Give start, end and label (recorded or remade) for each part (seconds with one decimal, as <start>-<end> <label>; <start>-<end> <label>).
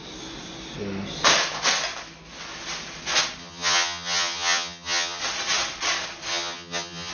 0.0-3.4 recorded; 3.4-5.2 remade; 5.2-6.3 recorded; 6.3-7.1 remade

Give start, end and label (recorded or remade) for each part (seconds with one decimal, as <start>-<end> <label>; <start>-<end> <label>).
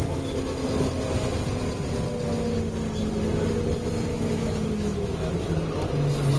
0.0-4.1 recorded; 4.1-5.3 remade; 5.3-6.4 recorded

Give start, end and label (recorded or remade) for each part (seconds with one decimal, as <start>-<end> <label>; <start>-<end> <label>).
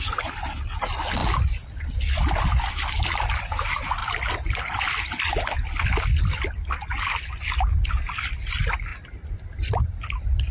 0.0-10.5 recorded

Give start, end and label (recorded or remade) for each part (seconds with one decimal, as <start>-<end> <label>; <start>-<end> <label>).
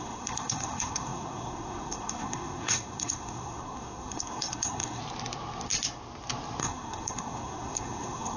0.0-5.0 remade; 5.0-6.6 recorded; 6.6-8.4 remade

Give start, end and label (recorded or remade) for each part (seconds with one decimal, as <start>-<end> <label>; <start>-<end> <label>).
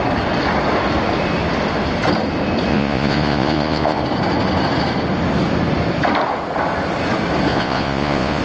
0.0-2.7 recorded; 2.7-4.0 remade; 4.0-7.5 recorded; 7.5-8.4 remade